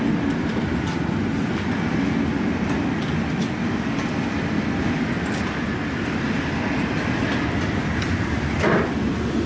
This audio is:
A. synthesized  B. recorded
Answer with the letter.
B